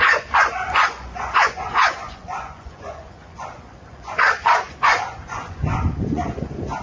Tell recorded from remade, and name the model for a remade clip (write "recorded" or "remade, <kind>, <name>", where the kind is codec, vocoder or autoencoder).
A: remade, vocoder, Vocos